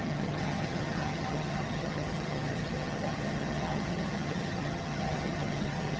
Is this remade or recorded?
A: remade